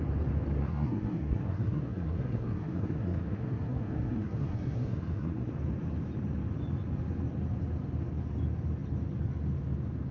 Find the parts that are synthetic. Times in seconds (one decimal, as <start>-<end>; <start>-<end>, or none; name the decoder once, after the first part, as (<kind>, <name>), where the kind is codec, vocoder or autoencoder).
0.6-5.5 (codec, SNAC)